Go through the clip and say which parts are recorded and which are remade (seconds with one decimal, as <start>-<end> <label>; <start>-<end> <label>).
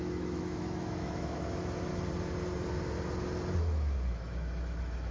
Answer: 0.0-1.9 remade; 1.9-3.6 recorded; 3.6-5.1 remade